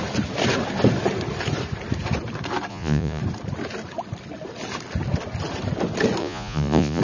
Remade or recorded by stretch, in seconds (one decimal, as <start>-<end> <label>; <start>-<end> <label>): 0.0-2.7 recorded; 2.7-3.2 remade; 3.2-6.2 recorded; 6.2-7.0 remade